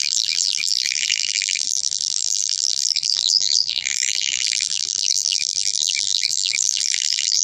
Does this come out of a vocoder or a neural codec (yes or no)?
yes